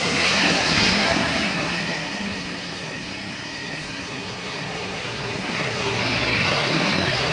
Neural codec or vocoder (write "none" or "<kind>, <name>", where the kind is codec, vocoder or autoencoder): codec, SNAC